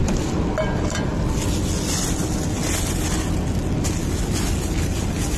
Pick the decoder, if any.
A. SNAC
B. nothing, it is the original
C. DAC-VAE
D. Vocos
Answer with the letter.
B